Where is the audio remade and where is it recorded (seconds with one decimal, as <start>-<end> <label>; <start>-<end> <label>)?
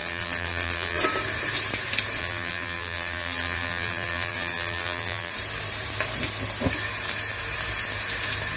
0.0-1.0 remade; 1.0-2.2 recorded; 2.2-5.3 remade; 5.3-8.6 recorded